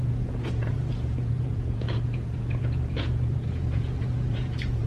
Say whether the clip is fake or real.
fake